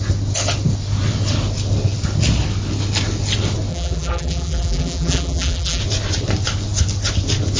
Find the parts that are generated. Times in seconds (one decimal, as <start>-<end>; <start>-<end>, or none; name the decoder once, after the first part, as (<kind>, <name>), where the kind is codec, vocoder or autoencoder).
3.7-5.8 (vocoder, BigVGAN v2)